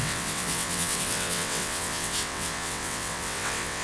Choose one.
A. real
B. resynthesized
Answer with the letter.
B